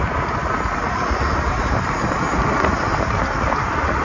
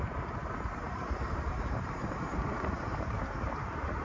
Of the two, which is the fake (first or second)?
second